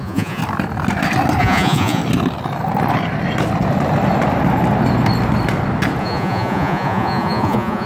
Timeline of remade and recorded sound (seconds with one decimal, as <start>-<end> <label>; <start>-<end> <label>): 0.0-0.4 remade; 0.4-1.4 recorded; 1.4-2.0 remade; 2.0-6.0 recorded; 6.0-7.9 remade

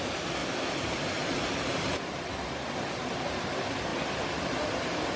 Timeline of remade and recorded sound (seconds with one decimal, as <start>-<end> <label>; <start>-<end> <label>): 0.0-0.4 recorded; 0.4-3.5 remade; 3.5-5.2 recorded

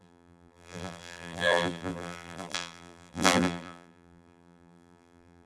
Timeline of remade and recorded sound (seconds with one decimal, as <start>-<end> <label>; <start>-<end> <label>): 0.0-5.5 remade

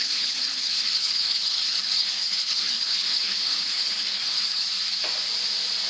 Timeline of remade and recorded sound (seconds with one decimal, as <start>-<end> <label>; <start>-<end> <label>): 0.0-4.7 remade; 4.7-5.9 recorded

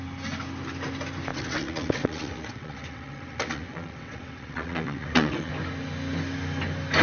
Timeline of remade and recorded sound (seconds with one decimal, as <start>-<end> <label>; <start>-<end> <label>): 0.0-1.3 recorded; 1.3-5.5 remade; 5.5-7.0 recorded

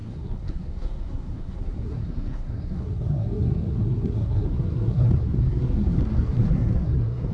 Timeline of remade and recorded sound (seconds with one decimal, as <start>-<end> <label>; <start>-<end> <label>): 0.0-7.3 remade